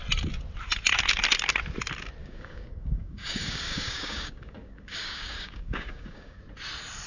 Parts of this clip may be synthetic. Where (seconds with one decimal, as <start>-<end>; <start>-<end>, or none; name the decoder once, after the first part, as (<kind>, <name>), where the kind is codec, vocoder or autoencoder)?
2.2-6.4 (codec, DAC)